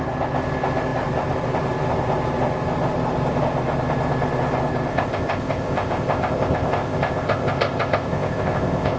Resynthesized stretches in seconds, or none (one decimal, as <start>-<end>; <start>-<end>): 4.9-9.0